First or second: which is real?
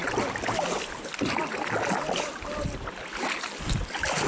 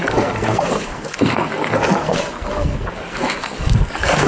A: first